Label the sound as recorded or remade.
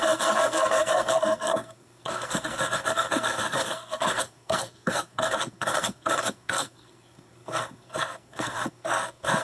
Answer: remade